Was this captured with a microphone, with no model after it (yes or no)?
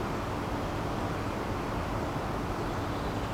yes